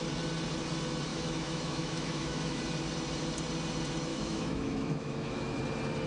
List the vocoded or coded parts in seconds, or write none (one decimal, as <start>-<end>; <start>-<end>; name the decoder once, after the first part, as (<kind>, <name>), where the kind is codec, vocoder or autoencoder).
1.1-2.6 (autoencoder, DAC-VAE); 4.1-5.6